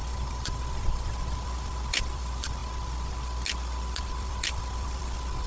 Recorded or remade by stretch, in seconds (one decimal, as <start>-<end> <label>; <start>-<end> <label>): 0.0-2.6 remade; 2.6-4.0 recorded; 4.0-5.5 remade